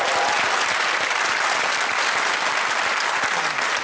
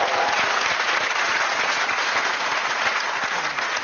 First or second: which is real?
first